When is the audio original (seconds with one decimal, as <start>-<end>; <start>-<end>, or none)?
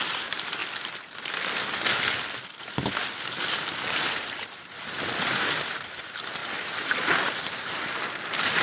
0.6-3.7; 6.4-7.4